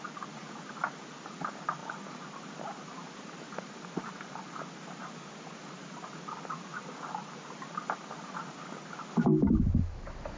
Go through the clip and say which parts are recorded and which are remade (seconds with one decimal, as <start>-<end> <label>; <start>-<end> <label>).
0.0-10.4 recorded